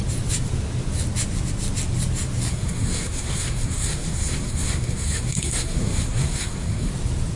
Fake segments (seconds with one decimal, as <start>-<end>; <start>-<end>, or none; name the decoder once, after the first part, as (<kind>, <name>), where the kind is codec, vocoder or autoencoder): 2.5-6.9 (codec, SNAC)